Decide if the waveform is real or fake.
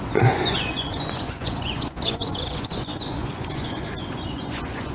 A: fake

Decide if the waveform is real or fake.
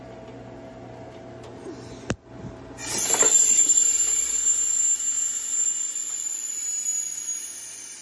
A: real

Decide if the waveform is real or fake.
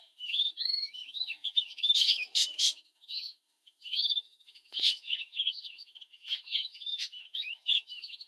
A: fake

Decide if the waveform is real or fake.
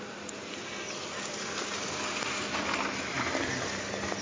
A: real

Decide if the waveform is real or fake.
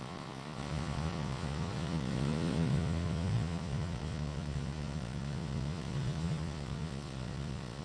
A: fake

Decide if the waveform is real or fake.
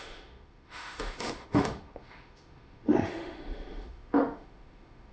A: fake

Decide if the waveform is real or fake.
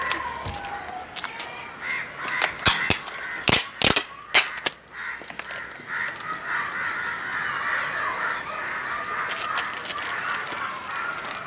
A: real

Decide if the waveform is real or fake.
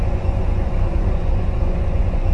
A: fake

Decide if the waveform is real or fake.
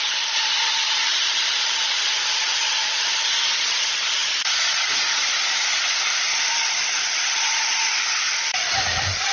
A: real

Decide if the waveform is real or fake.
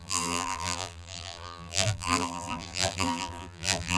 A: fake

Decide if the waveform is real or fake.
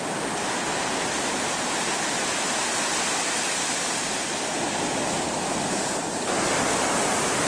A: real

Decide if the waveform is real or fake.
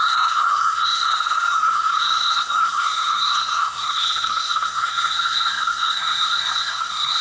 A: fake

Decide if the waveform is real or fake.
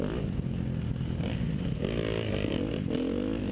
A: real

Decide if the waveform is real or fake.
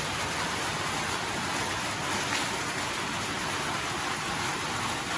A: real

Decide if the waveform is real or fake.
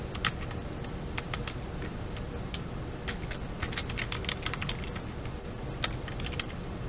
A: real